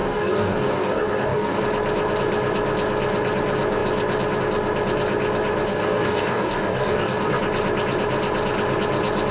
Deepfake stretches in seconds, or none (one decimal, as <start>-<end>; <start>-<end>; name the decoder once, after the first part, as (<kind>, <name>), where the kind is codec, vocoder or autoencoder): 0.0-1.6 (codec, DAC); 5.7-7.4